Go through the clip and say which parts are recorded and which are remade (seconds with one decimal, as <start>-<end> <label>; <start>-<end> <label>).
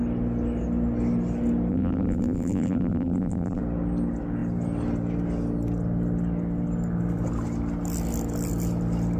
0.0-1.7 recorded; 1.7-3.6 remade; 3.6-9.2 recorded